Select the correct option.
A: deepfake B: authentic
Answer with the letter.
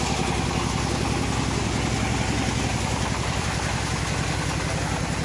B